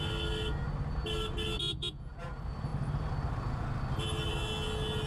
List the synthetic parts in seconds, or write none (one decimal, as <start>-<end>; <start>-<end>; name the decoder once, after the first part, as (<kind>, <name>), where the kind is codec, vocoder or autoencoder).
1.6-2.1 (vocoder, Vocos)